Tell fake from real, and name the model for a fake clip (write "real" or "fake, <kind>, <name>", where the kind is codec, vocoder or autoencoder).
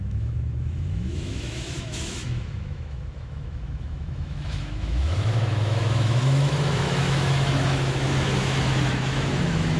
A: fake, autoencoder, DAC-VAE